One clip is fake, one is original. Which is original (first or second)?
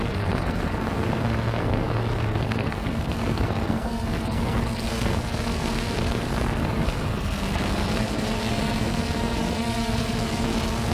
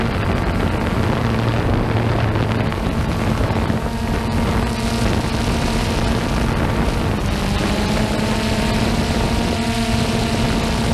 second